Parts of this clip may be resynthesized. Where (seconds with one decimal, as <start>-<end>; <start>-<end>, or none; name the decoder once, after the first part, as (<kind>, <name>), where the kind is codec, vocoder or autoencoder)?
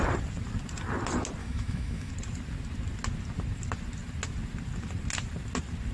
1.4-2.1 (autoencoder, DAC-VAE)